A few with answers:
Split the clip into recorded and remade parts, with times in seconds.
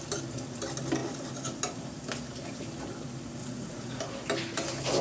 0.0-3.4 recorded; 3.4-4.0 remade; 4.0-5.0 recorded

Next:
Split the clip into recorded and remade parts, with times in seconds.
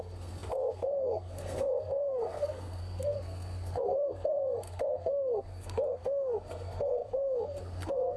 0.0-8.2 remade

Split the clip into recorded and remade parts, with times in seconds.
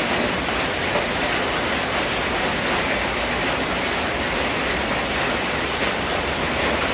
0.0-6.9 recorded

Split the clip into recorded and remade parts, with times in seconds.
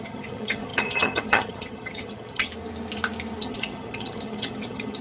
0.0-2.5 remade; 2.5-3.4 recorded; 3.4-5.0 remade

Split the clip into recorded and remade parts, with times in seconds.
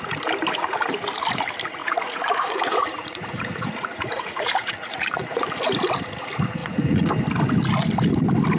0.0-1.8 recorded; 1.8-5.4 remade; 5.4-6.6 recorded; 6.6-7.1 remade; 7.1-8.6 recorded